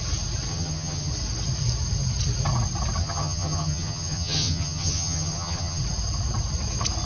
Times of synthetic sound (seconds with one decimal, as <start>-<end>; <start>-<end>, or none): 0.5-1.1; 3.0-5.8